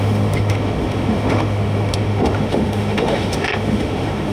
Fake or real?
fake